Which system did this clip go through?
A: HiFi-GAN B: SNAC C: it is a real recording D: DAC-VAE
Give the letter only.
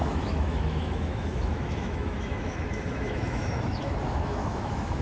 D